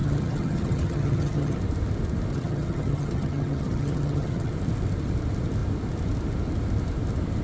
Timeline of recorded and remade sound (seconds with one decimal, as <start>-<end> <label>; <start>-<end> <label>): 0.0-1.6 remade; 1.6-2.3 recorded; 2.3-4.5 remade; 4.5-7.4 recorded